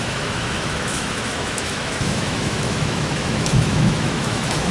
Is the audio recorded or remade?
remade